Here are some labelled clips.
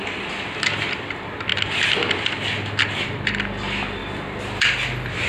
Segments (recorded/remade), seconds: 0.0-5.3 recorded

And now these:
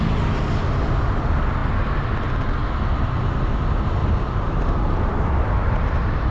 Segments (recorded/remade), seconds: 0.0-4.0 recorded; 4.0-6.3 remade

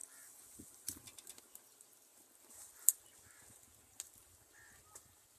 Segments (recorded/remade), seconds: 0.0-5.4 recorded

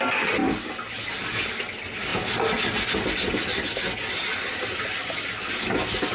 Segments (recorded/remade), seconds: 0.0-6.1 recorded